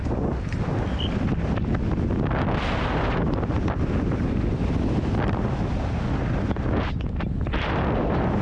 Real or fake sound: real